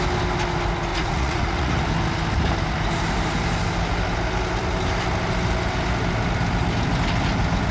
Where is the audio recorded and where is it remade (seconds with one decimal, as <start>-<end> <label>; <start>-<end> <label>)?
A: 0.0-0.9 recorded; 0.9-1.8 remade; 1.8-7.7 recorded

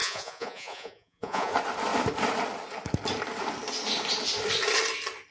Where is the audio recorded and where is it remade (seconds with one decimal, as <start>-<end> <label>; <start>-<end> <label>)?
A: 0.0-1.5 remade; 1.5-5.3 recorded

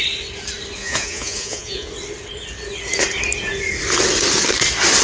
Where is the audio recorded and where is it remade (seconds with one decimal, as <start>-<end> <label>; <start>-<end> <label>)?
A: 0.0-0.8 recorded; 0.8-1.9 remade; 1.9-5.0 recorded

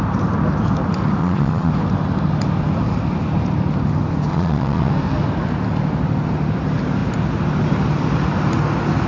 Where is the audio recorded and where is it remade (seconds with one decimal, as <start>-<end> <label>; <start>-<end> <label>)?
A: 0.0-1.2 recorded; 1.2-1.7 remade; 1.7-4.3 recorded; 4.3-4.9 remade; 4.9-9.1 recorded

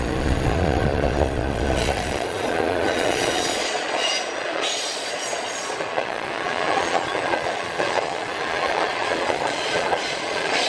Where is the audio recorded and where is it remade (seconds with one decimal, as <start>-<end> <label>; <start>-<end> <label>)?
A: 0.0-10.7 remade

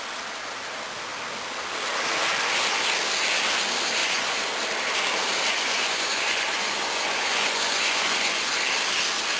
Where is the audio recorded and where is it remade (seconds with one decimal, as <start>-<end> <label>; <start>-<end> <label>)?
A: 0.0-4.0 recorded; 4.0-4.5 remade; 4.5-5.5 recorded; 5.5-8.5 remade; 8.5-9.4 recorded

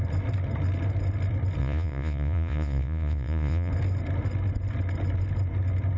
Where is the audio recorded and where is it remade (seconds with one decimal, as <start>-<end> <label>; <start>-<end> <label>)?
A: 0.0-1.6 recorded; 1.6-3.7 remade; 3.7-6.0 recorded

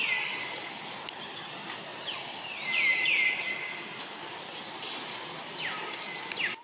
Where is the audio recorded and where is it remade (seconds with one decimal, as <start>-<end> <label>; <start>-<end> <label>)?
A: 0.0-6.6 recorded